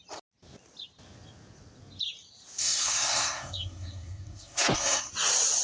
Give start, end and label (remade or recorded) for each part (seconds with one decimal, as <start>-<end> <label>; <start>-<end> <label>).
0.0-2.6 recorded; 2.6-5.1 remade; 5.1-5.6 recorded